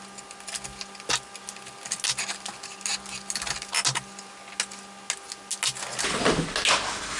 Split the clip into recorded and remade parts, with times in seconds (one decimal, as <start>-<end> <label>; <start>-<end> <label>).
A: 0.0-7.2 recorded